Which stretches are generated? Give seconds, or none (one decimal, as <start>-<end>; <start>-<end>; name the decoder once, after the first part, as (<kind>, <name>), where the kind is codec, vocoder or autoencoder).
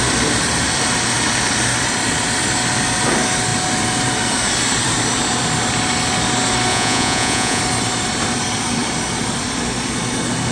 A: 6.7-7.6 (vocoder, Vocos)